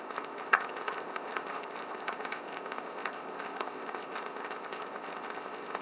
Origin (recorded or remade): remade